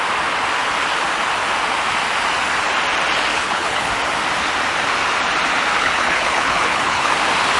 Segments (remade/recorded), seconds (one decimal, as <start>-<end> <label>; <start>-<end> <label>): 0.0-3.3 recorded; 3.3-3.9 remade; 3.9-5.7 recorded; 5.7-7.1 remade; 7.1-7.6 recorded